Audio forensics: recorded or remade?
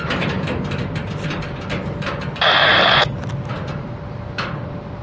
recorded